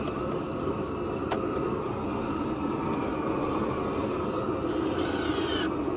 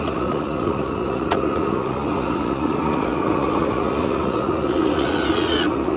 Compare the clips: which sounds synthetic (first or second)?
second